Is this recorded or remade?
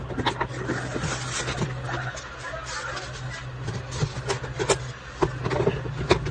recorded